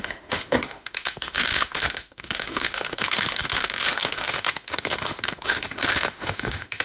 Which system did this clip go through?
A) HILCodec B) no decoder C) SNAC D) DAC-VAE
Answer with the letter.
D